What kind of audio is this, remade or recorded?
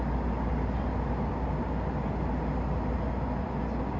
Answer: recorded